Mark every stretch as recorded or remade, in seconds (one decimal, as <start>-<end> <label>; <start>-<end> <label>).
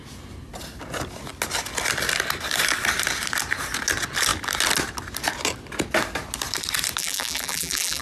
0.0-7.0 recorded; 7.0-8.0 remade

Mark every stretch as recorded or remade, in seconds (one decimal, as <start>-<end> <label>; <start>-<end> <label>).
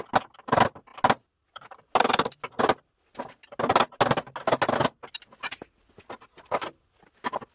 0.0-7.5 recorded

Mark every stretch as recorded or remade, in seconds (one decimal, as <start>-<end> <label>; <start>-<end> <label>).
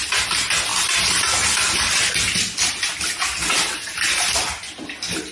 0.0-5.3 recorded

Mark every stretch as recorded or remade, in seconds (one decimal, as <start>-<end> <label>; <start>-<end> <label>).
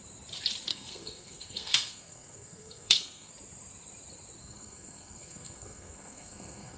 0.0-0.7 recorded; 0.7-3.3 remade; 3.3-4.4 recorded; 4.4-6.8 remade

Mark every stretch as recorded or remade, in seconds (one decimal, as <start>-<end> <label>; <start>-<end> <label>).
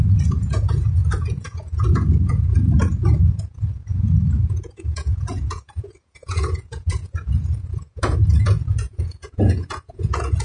0.0-10.4 remade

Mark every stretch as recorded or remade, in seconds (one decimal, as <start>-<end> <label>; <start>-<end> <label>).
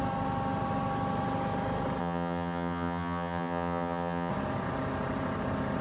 0.0-2.0 recorded; 2.0-4.3 remade; 4.3-5.8 recorded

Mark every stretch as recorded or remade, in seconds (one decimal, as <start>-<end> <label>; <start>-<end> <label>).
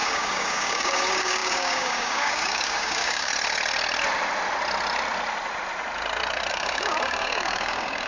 0.0-3.3 remade; 3.3-6.5 recorded; 6.5-8.1 remade